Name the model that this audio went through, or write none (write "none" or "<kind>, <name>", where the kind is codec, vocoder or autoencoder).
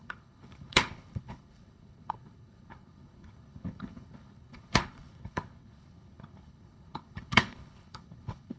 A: codec, HILCodec